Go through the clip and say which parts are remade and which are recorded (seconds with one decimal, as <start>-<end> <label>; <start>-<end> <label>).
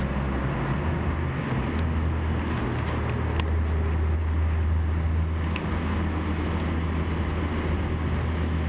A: 0.0-8.7 recorded